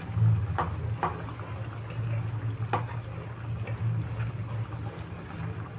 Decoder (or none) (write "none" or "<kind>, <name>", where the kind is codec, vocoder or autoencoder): none